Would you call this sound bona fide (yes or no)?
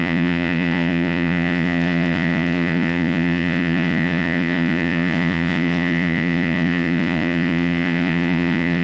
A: no